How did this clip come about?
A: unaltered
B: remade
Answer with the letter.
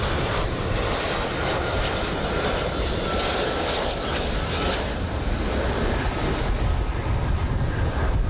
A